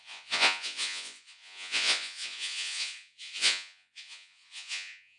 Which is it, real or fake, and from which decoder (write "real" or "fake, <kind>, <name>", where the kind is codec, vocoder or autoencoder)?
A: fake, vocoder, Vocos